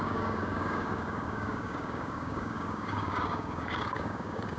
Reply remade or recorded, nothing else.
remade